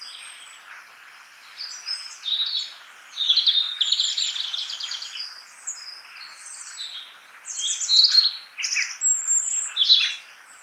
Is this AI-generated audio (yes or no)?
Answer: no